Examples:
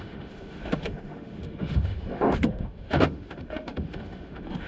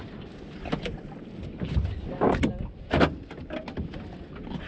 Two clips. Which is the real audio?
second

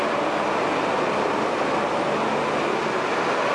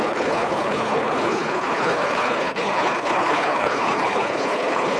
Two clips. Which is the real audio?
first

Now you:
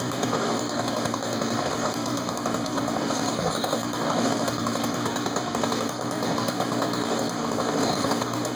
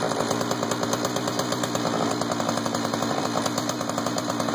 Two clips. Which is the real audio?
second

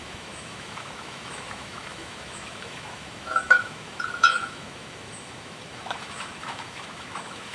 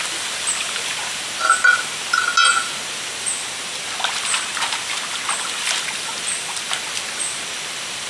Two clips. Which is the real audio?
second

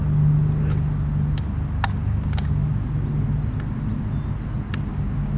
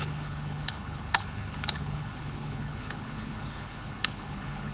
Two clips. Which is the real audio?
first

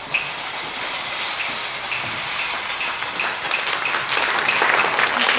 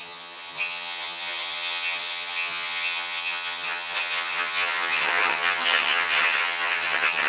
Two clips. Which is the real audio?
first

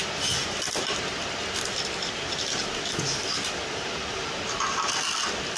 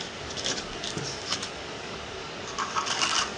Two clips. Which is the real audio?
first